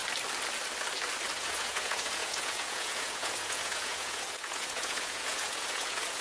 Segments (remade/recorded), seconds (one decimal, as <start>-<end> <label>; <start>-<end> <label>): 0.0-1.3 recorded; 1.3-6.2 remade